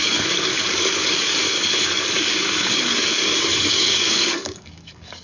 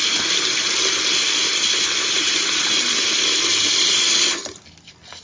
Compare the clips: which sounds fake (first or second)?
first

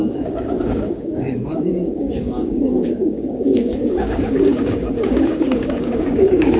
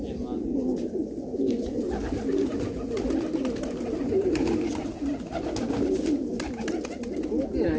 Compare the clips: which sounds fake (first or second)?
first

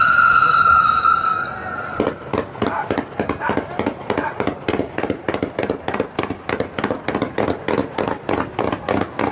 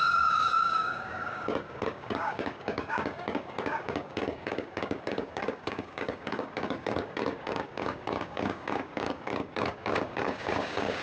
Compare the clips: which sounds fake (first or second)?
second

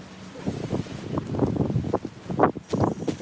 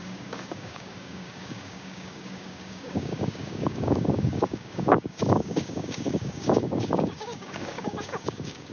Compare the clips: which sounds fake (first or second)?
second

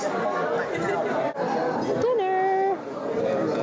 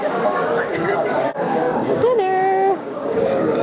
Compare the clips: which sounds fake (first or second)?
second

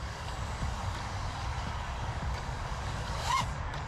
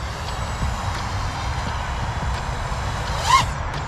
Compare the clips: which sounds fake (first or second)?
first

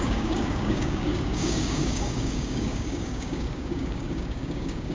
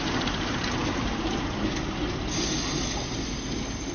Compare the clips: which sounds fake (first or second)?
first